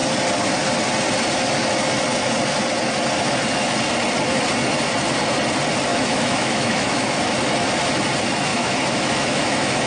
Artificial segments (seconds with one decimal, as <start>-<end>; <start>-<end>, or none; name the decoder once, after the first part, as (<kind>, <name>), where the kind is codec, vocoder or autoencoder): 5.9-7.2 (autoencoder, DAC-VAE); 8.5-9.9